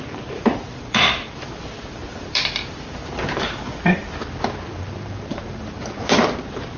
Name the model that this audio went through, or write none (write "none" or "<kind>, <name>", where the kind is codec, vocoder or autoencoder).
vocoder, BigVGAN v2